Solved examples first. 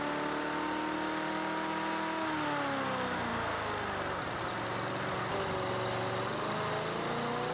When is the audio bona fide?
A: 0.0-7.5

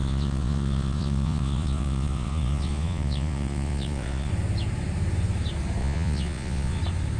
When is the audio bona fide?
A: 4.3-5.8; 6.8-7.2

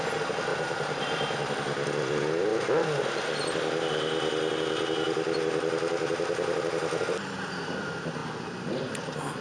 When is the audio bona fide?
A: 0.0-0.5; 1.5-9.4

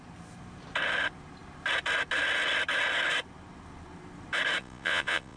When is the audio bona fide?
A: 0.0-4.6